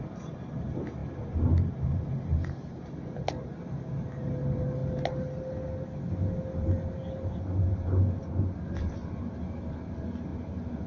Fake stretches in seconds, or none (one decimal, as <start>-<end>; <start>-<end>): none